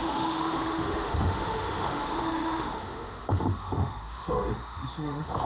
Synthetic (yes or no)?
yes